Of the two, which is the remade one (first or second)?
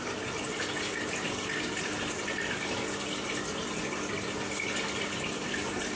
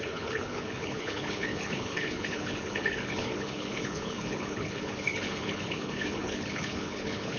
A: second